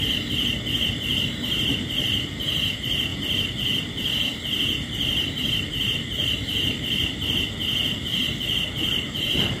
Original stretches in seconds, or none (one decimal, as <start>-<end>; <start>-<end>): 3.1-3.8; 8.2-8.7